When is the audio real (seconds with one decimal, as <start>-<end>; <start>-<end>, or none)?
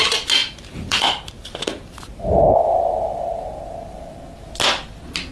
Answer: 0.0-0.4; 3.6-5.3